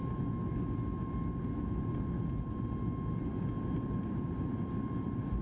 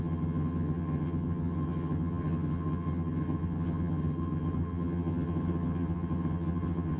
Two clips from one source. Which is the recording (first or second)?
first